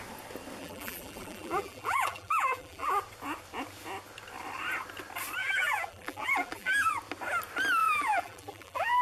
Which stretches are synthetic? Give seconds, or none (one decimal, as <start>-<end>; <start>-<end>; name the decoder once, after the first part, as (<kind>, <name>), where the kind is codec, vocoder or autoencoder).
0.6-3.0 (vocoder, BigVGAN v2); 5.4-6.9; 7.8-9.0